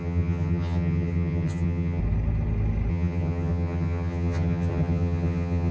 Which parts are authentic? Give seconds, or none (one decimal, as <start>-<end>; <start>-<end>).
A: 2.0-2.9